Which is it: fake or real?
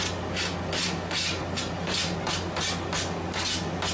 real